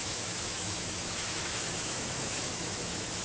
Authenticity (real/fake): fake